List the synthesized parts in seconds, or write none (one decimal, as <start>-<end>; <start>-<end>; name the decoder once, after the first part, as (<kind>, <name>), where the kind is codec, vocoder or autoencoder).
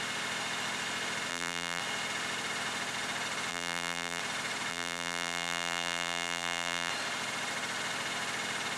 1.3-1.8 (vocoder, BigVGAN v2); 3.5-4.2; 4.7-6.9